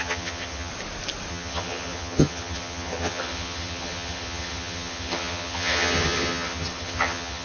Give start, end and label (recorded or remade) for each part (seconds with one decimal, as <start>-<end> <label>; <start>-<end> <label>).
0.0-0.7 remade; 0.7-1.3 recorded; 1.3-7.4 remade